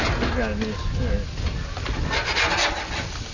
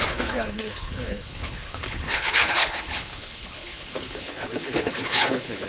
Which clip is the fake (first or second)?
second